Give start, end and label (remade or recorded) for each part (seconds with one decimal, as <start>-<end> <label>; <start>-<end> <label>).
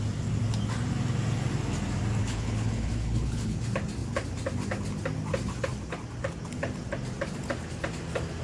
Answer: 0.0-2.2 recorded; 2.2-3.6 remade; 3.6-8.4 recorded